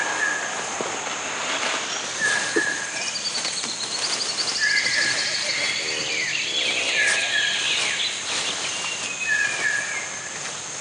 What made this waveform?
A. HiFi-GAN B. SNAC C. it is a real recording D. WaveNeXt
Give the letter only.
C